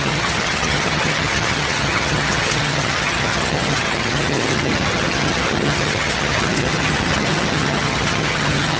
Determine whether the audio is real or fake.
fake